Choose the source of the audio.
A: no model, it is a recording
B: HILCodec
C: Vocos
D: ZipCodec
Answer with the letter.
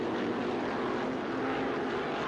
A